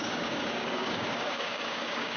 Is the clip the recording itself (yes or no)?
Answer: no